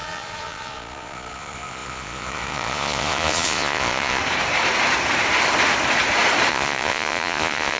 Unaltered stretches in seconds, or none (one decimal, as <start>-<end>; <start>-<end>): 4.2-6.5